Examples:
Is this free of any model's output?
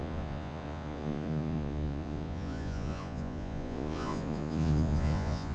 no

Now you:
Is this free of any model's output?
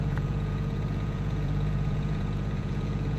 no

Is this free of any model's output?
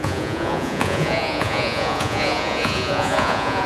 no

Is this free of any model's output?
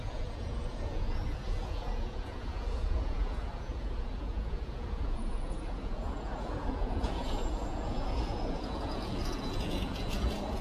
no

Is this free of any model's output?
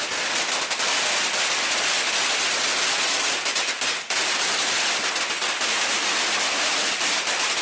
yes